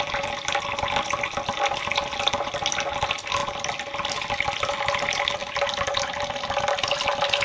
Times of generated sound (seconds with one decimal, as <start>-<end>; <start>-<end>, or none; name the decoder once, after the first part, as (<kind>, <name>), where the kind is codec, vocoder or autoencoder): none